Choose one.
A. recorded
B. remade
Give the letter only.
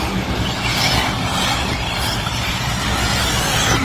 A